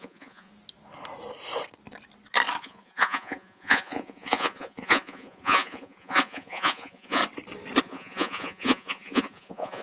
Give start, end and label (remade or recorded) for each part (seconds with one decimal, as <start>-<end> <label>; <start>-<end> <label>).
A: 0.0-0.5 remade; 0.5-2.6 recorded; 2.6-7.2 remade; 7.2-7.8 recorded; 7.8-9.8 remade